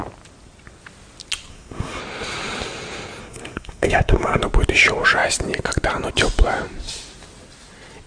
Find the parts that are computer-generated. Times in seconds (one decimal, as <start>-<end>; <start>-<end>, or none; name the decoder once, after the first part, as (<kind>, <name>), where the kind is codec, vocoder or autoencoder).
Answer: 1.5-2.0 (codec, SNAC); 3.2-4.4